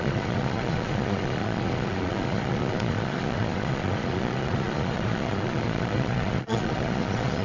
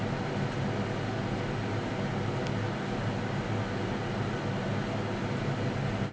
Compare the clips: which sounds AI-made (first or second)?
first